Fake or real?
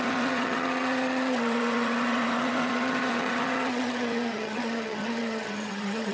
fake